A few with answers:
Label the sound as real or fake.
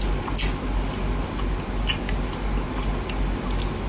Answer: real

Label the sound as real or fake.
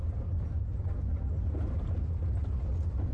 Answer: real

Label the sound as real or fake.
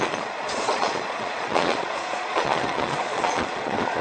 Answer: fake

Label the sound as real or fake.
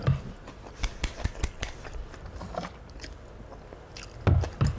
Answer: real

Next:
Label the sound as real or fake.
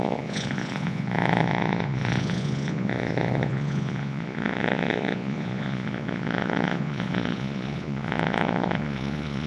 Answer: fake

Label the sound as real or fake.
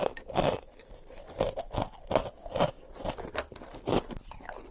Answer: real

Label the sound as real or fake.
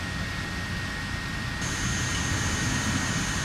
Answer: real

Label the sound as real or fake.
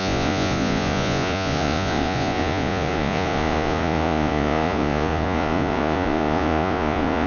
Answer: fake